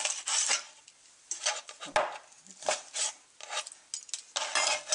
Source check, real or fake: real